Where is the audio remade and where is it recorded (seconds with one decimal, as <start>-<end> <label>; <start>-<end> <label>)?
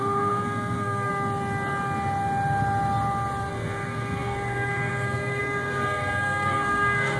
0.0-1.1 remade; 1.1-3.5 recorded; 3.5-7.2 remade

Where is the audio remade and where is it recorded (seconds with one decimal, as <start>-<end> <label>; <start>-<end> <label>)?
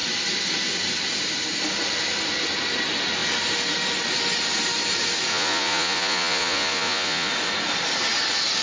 0.0-5.3 recorded; 5.3-7.3 remade; 7.3-8.6 recorded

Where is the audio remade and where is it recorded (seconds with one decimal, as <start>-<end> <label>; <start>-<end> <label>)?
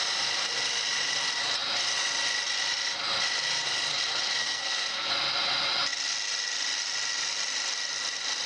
0.0-4.4 recorded; 4.4-5.1 remade; 5.1-8.5 recorded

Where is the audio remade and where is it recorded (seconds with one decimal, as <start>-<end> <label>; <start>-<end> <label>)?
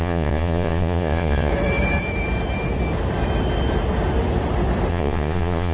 0.0-1.5 remade; 1.5-4.9 recorded; 4.9-5.7 remade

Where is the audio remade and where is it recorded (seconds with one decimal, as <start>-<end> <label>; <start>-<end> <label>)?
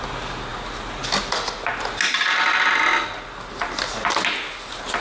0.0-5.0 recorded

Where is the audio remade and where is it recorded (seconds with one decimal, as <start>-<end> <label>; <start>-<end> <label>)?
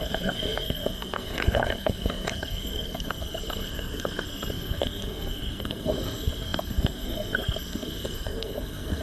0.0-9.0 remade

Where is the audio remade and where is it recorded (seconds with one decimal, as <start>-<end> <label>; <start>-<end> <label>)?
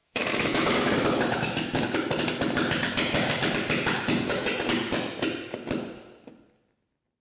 0.0-1.8 remade; 1.8-7.2 recorded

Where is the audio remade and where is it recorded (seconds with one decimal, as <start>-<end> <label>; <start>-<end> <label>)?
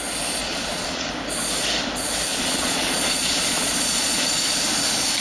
0.0-0.4 recorded; 0.4-1.1 remade; 1.1-2.3 recorded; 2.3-4.2 remade; 4.2-5.2 recorded